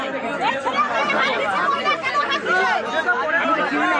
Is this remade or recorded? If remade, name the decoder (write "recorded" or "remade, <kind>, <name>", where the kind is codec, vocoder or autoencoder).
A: remade, vocoder, BigVGAN v2